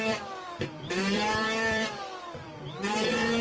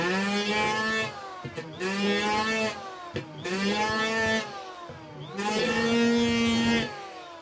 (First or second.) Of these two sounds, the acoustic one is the second